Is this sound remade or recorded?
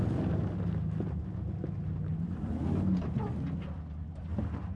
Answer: recorded